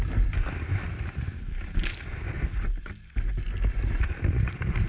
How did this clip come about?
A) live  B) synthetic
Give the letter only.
A